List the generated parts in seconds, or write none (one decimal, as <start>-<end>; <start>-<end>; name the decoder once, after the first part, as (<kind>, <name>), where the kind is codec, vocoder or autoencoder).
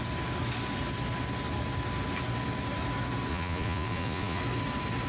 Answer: 3.3-4.4 (vocoder, Vocos)